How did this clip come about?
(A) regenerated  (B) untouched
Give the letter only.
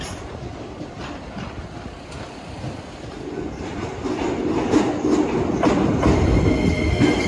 B